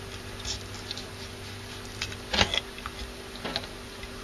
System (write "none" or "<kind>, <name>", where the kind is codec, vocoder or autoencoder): none